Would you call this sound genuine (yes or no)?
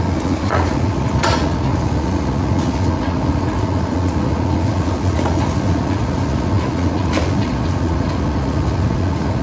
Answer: no